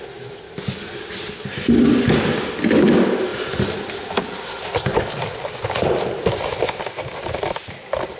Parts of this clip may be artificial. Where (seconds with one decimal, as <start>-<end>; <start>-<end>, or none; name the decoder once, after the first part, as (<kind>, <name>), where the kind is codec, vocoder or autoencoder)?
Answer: none